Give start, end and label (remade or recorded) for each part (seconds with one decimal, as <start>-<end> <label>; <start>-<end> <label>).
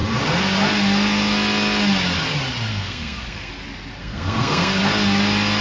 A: 0.0-2.7 recorded; 2.7-3.5 remade; 3.5-4.0 recorded; 4.0-4.8 remade; 4.8-5.6 recorded